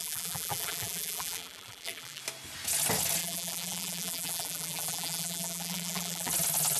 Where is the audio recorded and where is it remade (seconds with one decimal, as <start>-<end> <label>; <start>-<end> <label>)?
0.0-2.2 remade; 2.2-3.2 recorded; 3.2-6.3 remade; 6.3-6.8 recorded